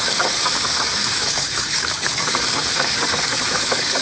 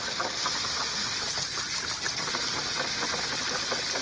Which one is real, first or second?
second